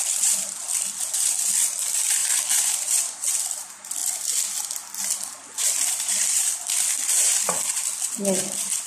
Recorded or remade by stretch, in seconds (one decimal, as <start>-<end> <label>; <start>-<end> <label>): 0.0-4.0 remade; 4.0-6.1 recorded; 6.1-8.9 remade

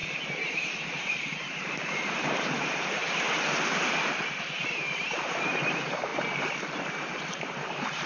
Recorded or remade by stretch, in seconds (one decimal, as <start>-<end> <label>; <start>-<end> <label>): 0.0-3.0 remade; 3.0-4.4 recorded; 4.4-8.1 remade